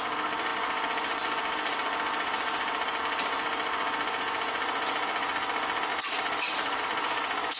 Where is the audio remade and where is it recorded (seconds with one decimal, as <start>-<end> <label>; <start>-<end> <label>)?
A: 0.0-5.9 recorded; 5.9-6.8 remade; 6.8-7.6 recorded